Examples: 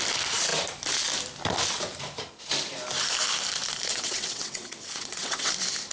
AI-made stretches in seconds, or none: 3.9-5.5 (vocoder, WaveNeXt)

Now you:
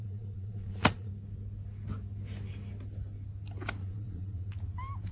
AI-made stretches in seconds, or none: 0.0-1.1 (vocoder, Vocos); 3.8-4.5

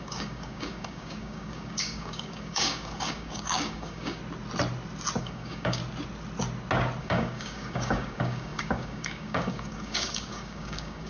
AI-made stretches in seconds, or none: 0.0-4.2 (codec, DAC); 5.2-5.8; 7.0-11.1

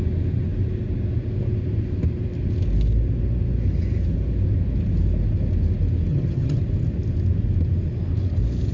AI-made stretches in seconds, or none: 6.1-6.6 (vocoder, HiFi-GAN)

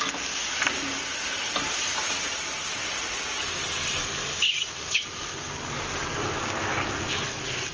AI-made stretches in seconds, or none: none

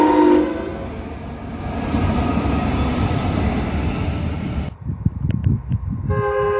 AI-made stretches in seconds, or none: none

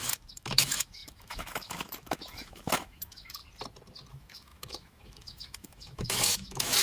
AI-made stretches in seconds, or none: 0.0-3.4 (autoencoder, DAC-VAE); 4.1-6.8

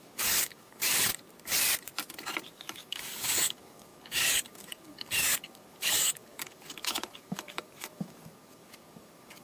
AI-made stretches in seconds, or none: 0.0-1.1 (codec, DAC); 2.5-9.4